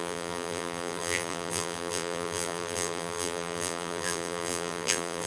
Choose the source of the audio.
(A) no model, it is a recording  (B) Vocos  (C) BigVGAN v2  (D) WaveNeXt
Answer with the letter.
C